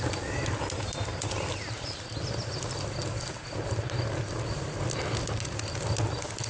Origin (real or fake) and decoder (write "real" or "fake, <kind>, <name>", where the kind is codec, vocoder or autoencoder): real